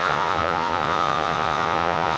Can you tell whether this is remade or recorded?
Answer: remade